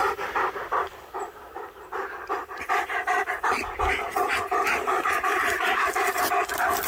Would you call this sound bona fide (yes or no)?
no